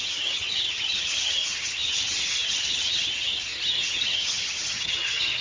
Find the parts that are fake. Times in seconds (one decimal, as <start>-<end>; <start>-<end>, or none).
0.0-5.4